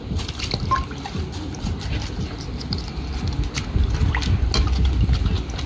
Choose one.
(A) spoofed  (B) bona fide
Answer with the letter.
B